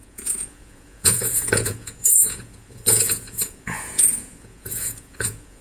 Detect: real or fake fake